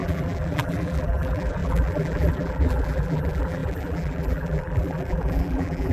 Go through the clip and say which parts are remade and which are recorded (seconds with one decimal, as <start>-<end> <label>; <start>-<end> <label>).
0.0-5.9 remade